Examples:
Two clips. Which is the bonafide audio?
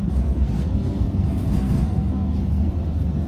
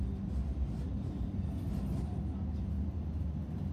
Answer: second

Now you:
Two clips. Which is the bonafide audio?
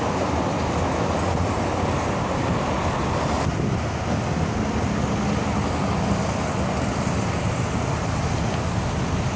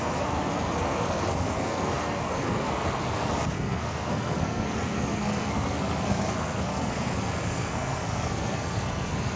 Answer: first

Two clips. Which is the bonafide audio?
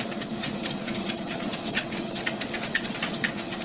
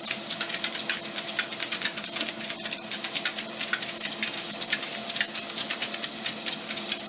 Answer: second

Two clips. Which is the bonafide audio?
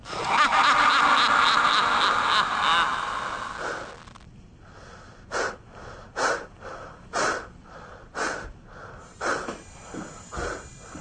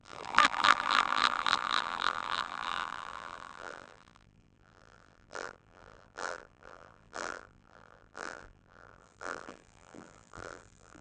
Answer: first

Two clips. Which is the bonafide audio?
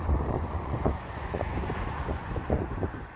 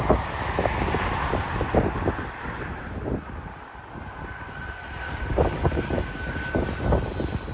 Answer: second